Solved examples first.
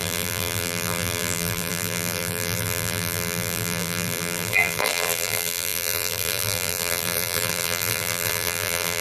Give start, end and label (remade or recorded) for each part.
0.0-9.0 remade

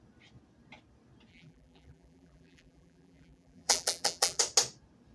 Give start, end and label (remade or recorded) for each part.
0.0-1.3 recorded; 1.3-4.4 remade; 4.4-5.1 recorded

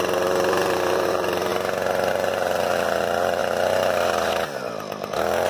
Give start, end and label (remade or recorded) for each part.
0.0-1.5 remade; 1.5-2.1 recorded; 2.1-5.5 remade